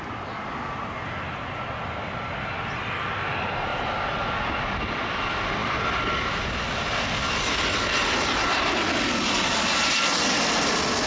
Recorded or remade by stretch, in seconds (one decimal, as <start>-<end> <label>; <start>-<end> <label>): 0.0-3.7 recorded; 3.7-4.3 remade; 4.3-11.1 recorded